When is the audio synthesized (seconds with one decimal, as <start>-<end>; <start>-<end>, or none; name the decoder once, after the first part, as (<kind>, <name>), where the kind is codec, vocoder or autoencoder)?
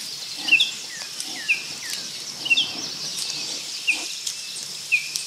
3.1-5.3 (vocoder, BigVGAN v2)